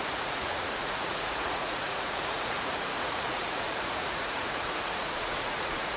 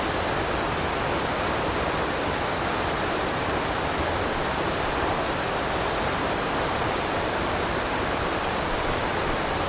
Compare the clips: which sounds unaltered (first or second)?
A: second